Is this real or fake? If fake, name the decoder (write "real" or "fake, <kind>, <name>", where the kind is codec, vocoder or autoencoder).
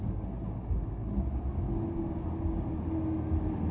real